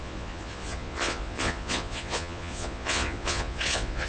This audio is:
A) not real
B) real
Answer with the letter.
A